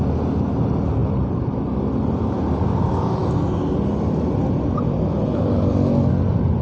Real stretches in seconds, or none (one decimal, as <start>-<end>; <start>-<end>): 0.0-6.6